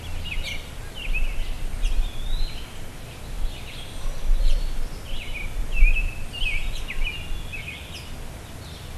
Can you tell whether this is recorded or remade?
recorded